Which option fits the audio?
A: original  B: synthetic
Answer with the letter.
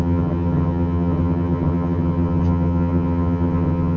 B